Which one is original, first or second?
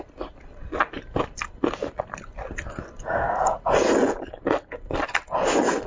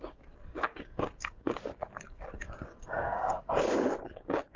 first